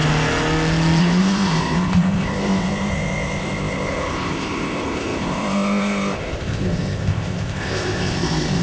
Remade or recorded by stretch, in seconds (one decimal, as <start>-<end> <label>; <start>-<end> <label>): 0.0-1.0 recorded; 1.0-8.6 remade

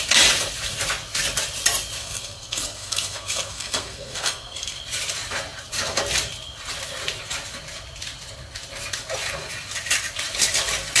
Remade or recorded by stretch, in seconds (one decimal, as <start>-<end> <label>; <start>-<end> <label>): 0.0-2.0 recorded; 2.0-4.8 remade; 4.8-11.0 recorded

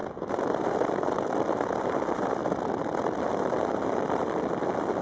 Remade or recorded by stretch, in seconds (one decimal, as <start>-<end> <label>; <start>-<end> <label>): 0.0-5.0 remade

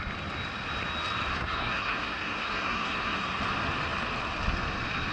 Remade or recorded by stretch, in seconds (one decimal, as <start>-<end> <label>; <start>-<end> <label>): 0.0-1.3 recorded; 1.3-3.4 remade; 3.4-5.1 recorded

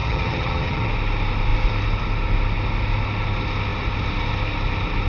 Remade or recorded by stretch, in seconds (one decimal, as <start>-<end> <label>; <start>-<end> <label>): 0.0-0.9 remade; 0.9-5.1 recorded